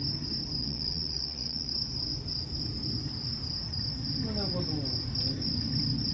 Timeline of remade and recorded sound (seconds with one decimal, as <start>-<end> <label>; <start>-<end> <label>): 0.0-0.6 recorded; 0.6-1.7 remade; 1.7-6.1 recorded